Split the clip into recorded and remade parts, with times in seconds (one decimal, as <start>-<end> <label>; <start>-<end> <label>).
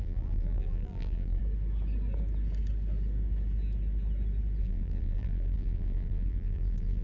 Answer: 0.0-1.4 remade; 1.4-4.6 recorded; 4.6-7.0 remade